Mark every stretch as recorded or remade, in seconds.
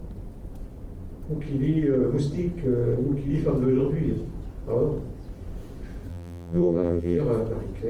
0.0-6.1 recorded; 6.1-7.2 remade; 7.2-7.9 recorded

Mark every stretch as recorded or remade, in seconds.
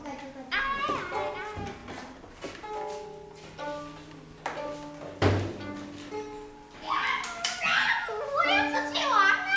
0.0-9.6 recorded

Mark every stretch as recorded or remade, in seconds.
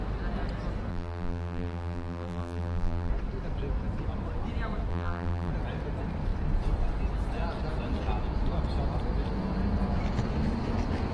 0.0-0.9 recorded; 0.9-3.1 remade; 3.1-4.9 recorded; 4.9-5.5 remade; 5.5-11.1 recorded